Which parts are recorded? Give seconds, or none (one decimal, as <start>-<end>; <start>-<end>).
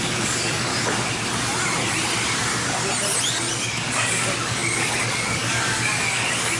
0.7-3.7